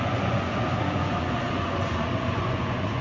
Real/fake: fake